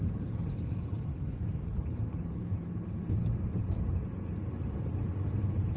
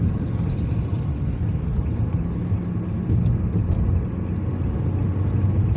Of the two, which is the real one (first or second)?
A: second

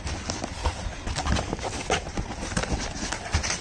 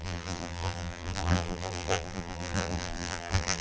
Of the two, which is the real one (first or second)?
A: first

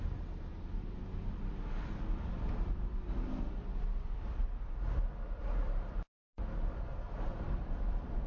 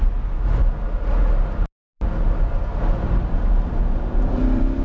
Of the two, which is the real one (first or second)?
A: second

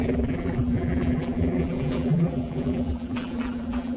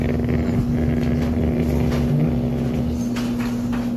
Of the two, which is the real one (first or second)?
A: second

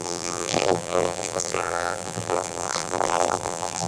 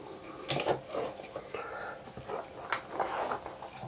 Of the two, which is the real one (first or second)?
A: second